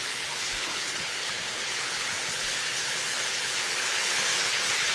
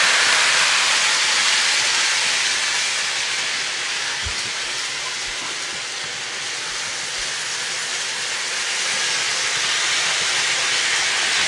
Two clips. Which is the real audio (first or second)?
second